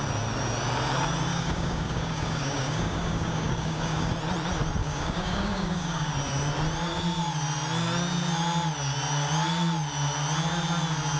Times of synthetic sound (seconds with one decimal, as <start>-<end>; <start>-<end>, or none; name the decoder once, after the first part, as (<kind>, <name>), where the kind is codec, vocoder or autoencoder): 1.3-4.1 (codec, DAC); 4.8-6.1